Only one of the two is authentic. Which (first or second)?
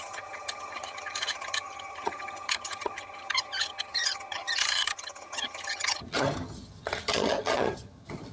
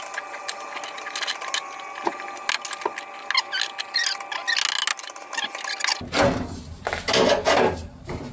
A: second